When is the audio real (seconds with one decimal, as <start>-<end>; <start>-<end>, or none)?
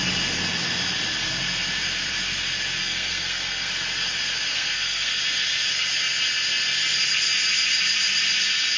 0.0-2.8; 3.7-4.5; 5.2-8.8